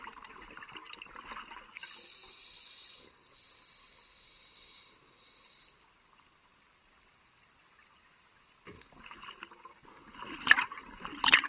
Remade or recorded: recorded